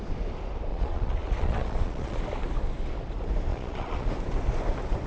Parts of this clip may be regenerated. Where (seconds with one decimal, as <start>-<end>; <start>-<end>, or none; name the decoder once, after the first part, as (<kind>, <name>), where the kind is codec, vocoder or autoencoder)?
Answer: 0.7-2.2 (vocoder, Vocos); 3.5-4.1